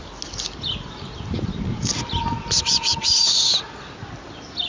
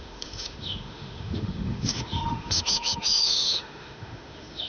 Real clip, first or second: first